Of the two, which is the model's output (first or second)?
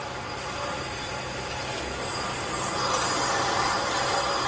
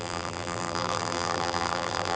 second